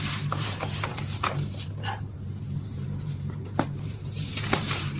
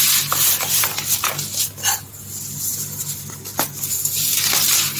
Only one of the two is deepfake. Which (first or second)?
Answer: first